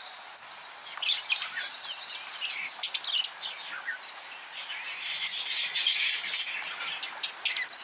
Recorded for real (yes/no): yes